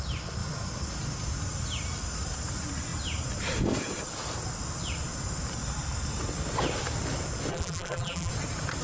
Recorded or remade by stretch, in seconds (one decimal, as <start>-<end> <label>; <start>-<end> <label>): 0.0-7.5 recorded; 7.5-8.3 remade; 8.3-8.8 recorded

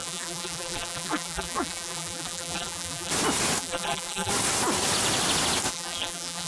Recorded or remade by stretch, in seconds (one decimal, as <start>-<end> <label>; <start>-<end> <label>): 0.0-3.1 remade; 3.1-3.6 recorded; 3.6-4.3 remade; 4.3-5.7 recorded; 5.7-6.5 remade